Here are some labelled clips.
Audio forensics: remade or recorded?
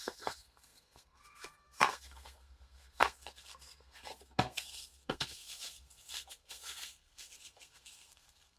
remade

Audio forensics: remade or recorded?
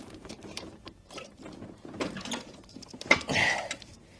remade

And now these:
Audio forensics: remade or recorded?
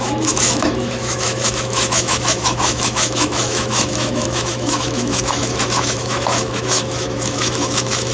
remade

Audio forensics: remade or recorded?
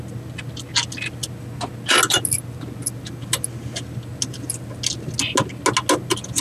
recorded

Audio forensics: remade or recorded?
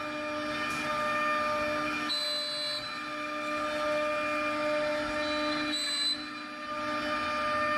recorded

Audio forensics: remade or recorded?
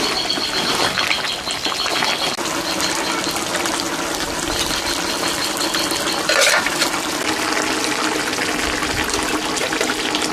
recorded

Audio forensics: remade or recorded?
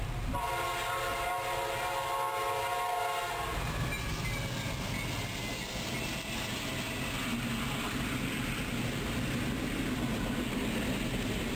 recorded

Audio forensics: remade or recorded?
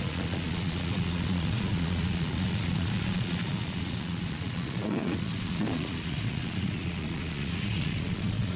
remade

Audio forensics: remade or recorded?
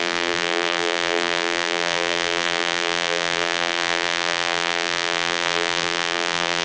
remade